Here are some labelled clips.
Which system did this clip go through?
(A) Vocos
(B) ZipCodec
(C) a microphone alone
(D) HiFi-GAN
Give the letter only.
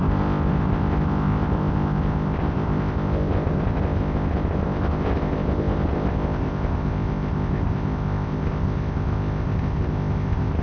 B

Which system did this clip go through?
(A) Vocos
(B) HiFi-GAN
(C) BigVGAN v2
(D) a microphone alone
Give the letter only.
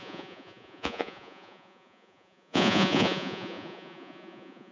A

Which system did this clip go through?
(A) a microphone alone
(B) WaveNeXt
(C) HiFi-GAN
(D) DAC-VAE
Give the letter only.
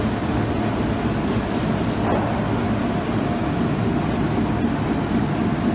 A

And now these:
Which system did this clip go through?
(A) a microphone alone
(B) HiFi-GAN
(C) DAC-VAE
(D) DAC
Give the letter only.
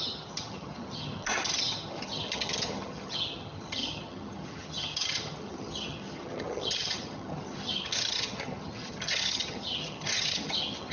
B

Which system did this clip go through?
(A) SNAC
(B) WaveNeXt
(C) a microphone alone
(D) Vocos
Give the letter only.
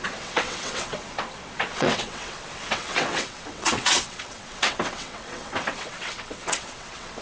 B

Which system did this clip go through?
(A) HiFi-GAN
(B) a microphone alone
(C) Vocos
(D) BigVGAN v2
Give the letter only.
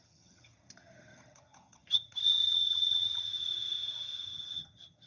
A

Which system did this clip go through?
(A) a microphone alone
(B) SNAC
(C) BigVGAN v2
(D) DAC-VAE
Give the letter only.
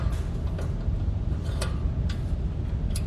A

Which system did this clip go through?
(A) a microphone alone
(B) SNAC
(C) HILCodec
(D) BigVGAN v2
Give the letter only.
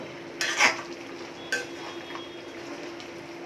A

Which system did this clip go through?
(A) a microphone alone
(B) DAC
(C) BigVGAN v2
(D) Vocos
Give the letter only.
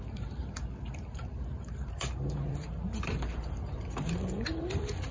C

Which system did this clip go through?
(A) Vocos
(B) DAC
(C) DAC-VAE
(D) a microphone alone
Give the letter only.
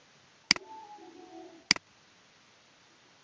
D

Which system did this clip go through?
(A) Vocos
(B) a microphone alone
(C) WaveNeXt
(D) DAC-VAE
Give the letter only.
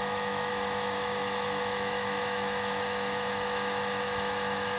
D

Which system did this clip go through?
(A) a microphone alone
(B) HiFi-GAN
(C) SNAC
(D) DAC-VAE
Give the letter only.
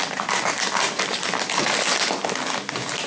A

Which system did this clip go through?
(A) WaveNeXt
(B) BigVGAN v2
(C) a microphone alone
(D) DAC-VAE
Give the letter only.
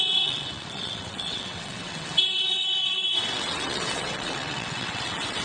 A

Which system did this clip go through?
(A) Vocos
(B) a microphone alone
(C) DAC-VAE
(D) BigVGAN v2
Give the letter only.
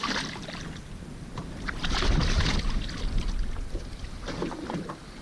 B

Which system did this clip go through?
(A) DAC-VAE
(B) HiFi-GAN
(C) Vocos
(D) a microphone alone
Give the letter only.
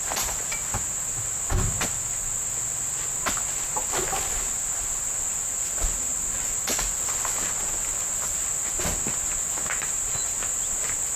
D